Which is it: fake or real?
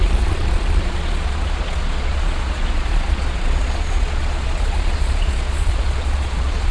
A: fake